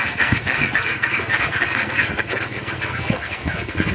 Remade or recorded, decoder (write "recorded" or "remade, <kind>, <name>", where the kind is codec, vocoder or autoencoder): remade, codec, SNAC